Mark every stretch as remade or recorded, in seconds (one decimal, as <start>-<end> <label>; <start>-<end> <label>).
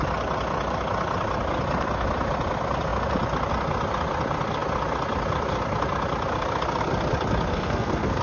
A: 0.0-7.5 recorded; 7.5-8.2 remade